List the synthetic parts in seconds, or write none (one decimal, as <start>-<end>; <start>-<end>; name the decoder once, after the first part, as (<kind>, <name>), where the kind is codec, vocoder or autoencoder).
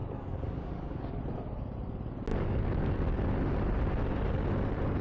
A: 0.0-1.2 (codec, DAC); 2.3-2.9